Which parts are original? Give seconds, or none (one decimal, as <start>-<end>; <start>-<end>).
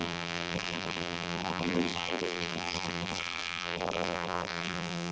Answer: none